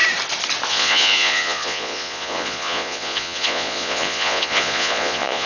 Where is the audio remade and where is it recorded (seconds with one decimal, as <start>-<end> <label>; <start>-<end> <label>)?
0.0-0.7 recorded; 0.7-5.5 remade